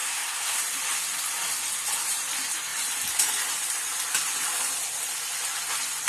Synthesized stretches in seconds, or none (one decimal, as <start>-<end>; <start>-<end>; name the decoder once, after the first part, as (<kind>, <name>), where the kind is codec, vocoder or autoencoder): 0.0-0.6 (codec, SNAC)